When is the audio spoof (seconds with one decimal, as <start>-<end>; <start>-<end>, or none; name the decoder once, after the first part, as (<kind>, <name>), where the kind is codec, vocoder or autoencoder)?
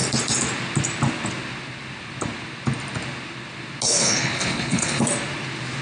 4.0-5.0 (codec, HILCodec)